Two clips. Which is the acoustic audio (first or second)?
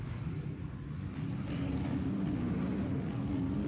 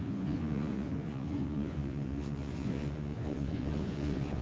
first